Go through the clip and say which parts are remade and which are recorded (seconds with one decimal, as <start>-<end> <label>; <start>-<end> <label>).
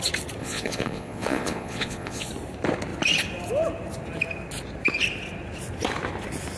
0.0-0.4 recorded; 0.4-2.3 remade; 2.3-6.6 recorded